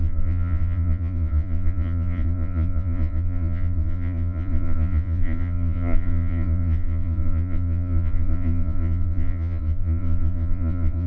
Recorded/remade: remade